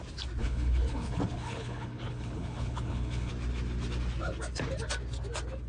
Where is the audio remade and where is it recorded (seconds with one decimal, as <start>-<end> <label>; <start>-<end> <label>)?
0.0-0.4 recorded; 0.4-3.3 remade; 3.3-5.7 recorded